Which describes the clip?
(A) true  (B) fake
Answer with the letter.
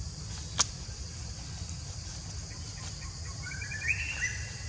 A